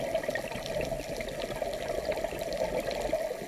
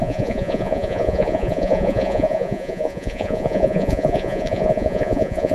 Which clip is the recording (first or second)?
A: first